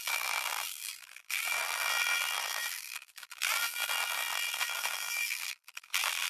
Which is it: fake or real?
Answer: fake